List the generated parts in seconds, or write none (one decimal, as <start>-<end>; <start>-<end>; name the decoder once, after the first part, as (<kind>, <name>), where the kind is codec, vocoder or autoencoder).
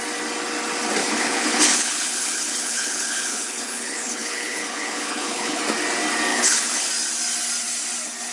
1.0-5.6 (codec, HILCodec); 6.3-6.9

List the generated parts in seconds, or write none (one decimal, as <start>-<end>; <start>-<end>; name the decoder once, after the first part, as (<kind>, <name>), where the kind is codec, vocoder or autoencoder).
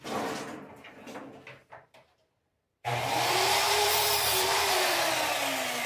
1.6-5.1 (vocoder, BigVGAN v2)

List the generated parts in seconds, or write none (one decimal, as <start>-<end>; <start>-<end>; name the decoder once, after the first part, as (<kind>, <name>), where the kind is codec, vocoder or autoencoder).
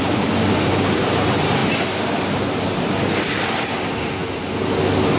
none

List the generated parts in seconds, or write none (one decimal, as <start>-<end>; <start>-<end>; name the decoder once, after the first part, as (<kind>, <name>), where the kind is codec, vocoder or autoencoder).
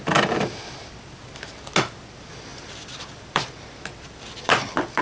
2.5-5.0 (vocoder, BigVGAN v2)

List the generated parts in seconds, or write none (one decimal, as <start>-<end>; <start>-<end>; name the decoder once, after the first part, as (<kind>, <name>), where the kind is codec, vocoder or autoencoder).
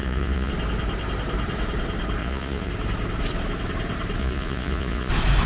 0.0-0.5 (vocoder, Vocos); 2.2-2.7; 4.2-5.1